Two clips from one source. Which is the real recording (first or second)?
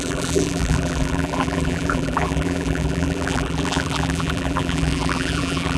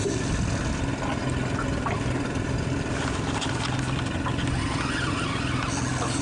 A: second